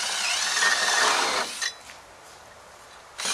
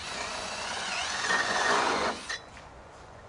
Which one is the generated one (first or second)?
second